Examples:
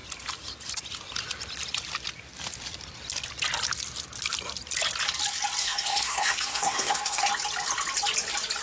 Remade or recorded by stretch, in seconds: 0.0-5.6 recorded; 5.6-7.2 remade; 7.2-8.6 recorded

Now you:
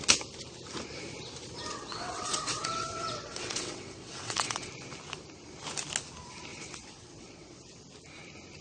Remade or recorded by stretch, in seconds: 0.0-1.7 recorded; 1.7-4.7 remade; 4.7-6.5 recorded; 6.5-7.8 remade; 7.8-8.6 recorded

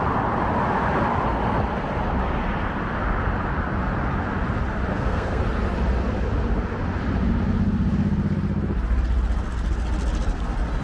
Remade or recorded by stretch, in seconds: 0.0-4.9 recorded; 4.9-5.4 remade; 5.4-10.8 recorded

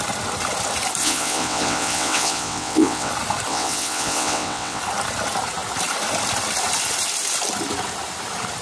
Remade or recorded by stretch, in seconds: 0.0-1.0 recorded; 1.0-3.1 remade; 3.1-3.5 recorded; 3.5-4.8 remade; 4.8-8.6 recorded

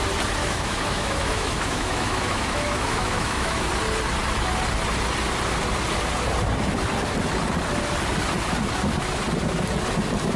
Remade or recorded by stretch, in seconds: 0.0-0.4 recorded; 0.4-3.7 remade; 3.7-10.4 recorded

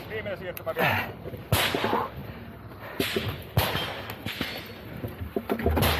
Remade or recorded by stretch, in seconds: 0.0-6.0 recorded

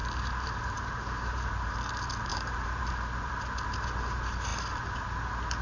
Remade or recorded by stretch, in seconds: 0.0-1.9 remade; 1.9-2.3 recorded; 2.3-2.9 remade; 2.9-5.6 recorded

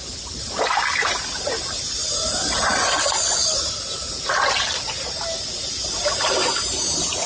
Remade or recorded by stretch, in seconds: 0.0-2.0 recorded; 2.0-3.6 remade; 3.6-7.3 recorded